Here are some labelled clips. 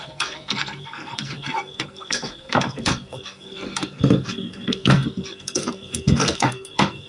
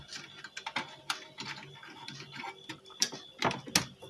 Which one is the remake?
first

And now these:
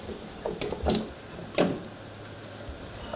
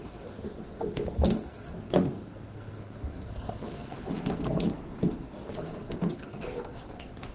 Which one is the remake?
second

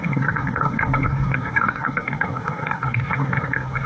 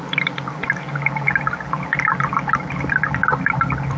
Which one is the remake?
first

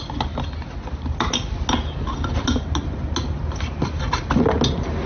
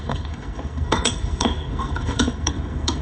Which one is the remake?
second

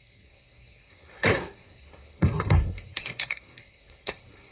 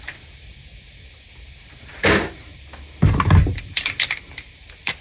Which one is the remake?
first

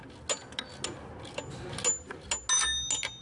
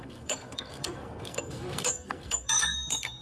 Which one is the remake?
second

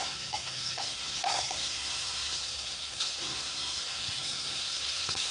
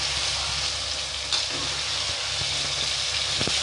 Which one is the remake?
first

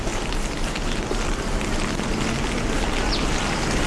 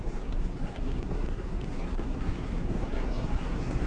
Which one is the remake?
second